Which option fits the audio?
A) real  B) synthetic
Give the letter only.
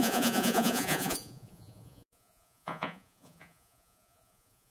B